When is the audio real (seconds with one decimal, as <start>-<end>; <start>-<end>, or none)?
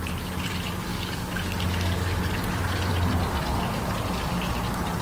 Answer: 0.0-0.9; 2.2-5.0